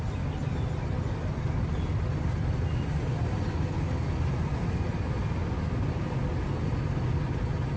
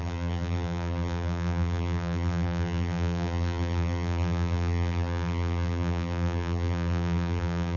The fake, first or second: second